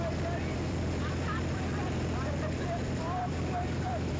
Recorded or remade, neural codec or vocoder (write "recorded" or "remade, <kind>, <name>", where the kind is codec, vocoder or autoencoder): remade, vocoder, BigVGAN v2